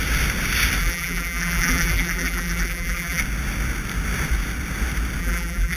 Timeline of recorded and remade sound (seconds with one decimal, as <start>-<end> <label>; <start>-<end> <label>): 0.0-0.8 recorded; 0.8-3.2 remade; 3.2-5.2 recorded; 5.2-5.8 remade